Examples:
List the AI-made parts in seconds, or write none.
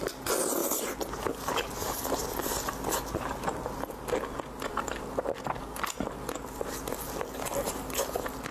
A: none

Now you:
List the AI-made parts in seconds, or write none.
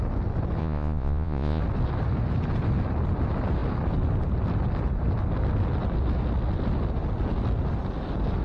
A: 0.6-1.6